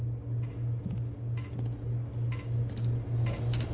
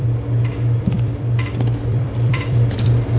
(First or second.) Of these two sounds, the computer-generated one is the second